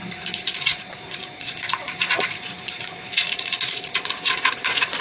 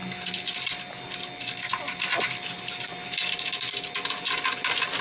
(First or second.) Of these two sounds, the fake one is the first